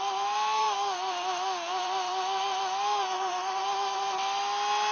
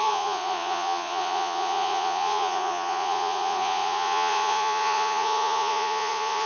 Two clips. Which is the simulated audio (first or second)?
second